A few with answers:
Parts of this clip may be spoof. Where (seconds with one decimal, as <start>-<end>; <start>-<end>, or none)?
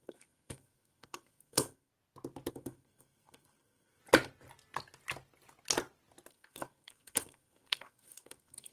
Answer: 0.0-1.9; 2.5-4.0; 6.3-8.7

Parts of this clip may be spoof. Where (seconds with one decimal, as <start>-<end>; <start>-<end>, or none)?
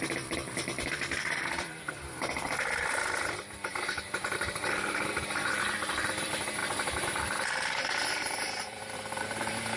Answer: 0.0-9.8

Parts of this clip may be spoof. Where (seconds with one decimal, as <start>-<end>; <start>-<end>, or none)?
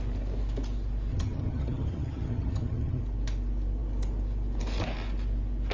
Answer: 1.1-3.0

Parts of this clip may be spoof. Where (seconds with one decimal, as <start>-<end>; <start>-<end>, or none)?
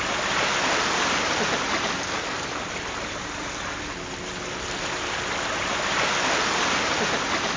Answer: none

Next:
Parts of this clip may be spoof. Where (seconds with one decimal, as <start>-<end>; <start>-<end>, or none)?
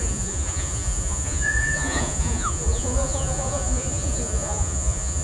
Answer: 0.0-5.2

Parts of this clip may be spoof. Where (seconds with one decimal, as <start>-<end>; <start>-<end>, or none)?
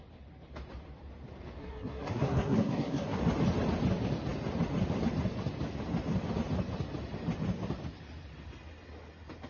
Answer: 1.6-3.2